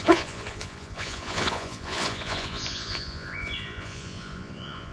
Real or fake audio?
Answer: fake